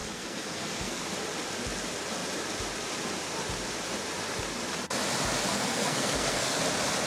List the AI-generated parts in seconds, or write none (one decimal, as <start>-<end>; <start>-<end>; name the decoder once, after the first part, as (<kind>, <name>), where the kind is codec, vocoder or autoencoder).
0.0-1.0 (codec, SNAC); 5.5-6.6